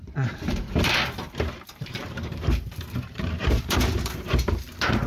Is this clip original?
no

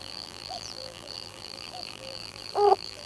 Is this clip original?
no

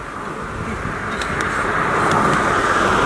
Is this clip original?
yes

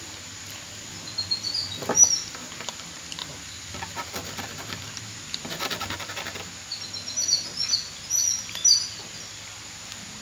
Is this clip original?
yes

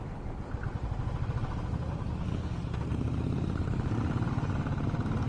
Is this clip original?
yes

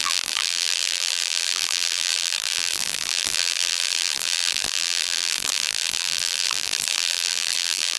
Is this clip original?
no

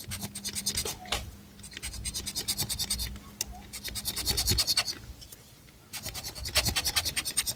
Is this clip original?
yes